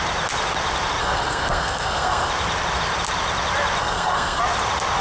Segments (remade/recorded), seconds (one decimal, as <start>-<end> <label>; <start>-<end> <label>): 0.0-1.0 recorded; 1.0-2.3 remade; 2.3-3.8 recorded; 3.8-4.4 remade; 4.4-5.0 recorded

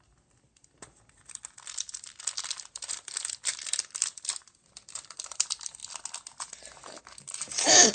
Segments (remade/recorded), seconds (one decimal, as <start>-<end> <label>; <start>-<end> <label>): 0.0-5.8 remade; 5.8-7.0 recorded; 7.0-7.9 remade